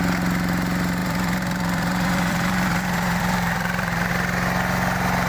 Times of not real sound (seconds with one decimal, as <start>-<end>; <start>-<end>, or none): 1.0-4.1